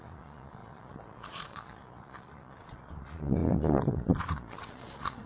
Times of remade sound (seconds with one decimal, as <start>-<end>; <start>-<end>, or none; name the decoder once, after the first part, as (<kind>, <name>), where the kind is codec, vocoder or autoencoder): 0.0-5.3 (vocoder, Vocos)